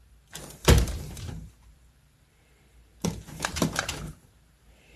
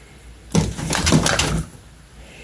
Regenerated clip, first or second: first